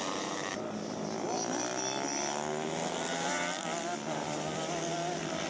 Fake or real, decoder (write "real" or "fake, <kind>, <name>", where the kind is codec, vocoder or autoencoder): fake, vocoder, BigVGAN v2